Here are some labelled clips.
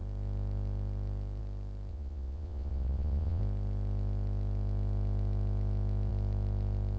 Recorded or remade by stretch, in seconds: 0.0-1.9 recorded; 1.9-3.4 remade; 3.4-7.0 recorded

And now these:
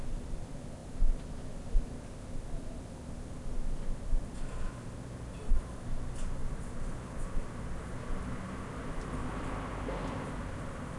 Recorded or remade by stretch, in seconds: 0.0-11.0 recorded

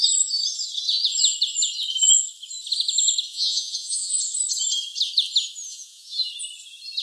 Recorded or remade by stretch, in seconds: 0.0-3.3 recorded; 3.3-4.2 remade; 4.2-5.7 recorded; 5.7-6.3 remade; 6.3-7.0 recorded

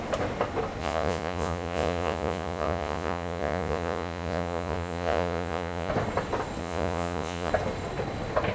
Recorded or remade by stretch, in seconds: 0.0-0.8 recorded; 0.8-5.9 remade; 5.9-6.6 recorded; 6.6-7.5 remade; 7.5-8.5 recorded

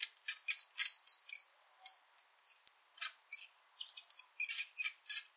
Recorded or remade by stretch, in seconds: 0.0-5.4 recorded

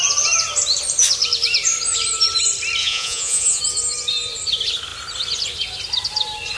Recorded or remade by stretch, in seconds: 0.0-2.8 recorded; 2.8-3.6 remade; 3.6-6.6 recorded

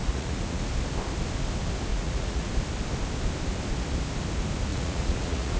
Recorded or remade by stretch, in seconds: 0.0-0.7 remade; 0.7-1.9 recorded; 1.9-2.5 remade; 2.5-4.7 recorded; 4.7-5.6 remade

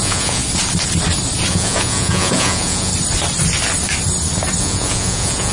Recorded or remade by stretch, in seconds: 0.0-0.4 remade; 0.4-1.5 recorded; 1.5-2.9 remade; 2.9-4.6 recorded; 4.6-5.5 remade